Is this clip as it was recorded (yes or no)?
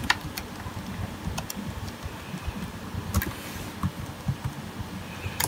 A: yes